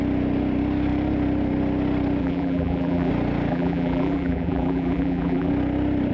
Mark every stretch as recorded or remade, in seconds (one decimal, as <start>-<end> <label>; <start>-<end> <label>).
0.0-2.2 recorded; 2.2-3.1 remade; 3.1-3.5 recorded; 3.5-5.5 remade; 5.5-6.1 recorded